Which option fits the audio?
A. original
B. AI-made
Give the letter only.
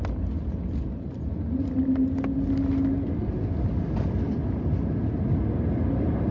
A